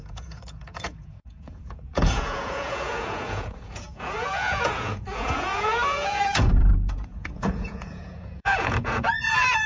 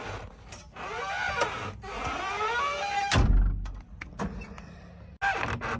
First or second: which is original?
second